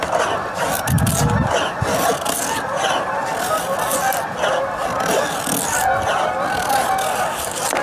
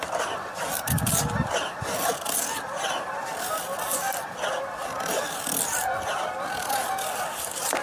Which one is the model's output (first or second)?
second